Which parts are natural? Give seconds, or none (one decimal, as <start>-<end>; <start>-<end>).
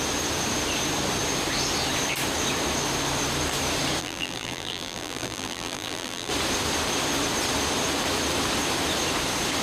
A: 0.0-4.0; 6.3-9.6